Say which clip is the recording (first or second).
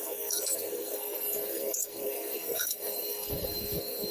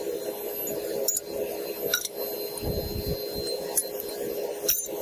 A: second